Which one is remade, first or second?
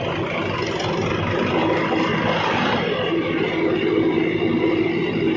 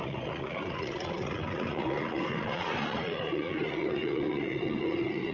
second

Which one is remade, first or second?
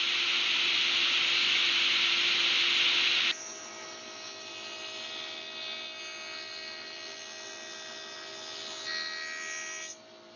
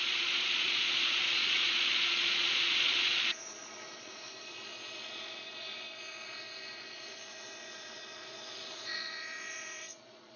second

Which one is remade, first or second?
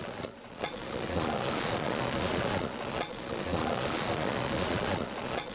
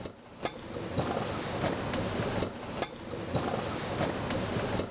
first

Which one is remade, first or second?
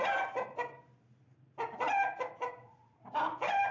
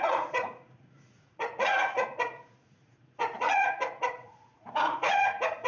second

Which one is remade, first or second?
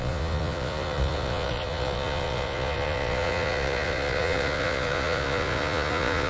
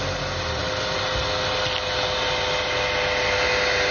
first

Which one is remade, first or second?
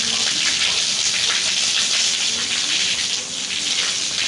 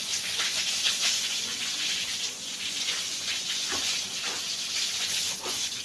second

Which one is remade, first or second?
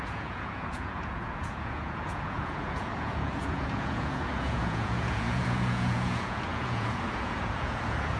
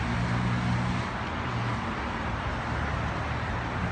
first